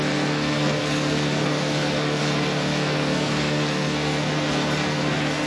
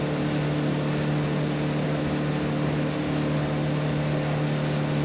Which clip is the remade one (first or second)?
first